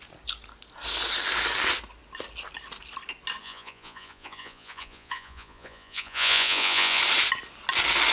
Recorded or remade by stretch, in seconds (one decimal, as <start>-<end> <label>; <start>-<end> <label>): 0.0-3.4 recorded; 3.4-7.0 remade; 7.0-8.1 recorded